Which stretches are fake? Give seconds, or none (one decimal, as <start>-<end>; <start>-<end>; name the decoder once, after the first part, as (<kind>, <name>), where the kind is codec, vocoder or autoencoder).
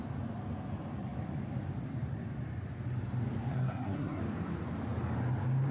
3.5-4.2 (codec, SNAC)